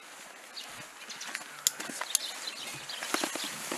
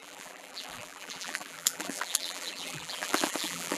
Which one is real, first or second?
first